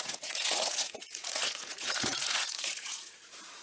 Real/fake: fake